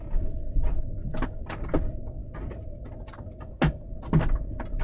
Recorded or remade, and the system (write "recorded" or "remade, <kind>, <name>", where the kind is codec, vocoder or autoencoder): recorded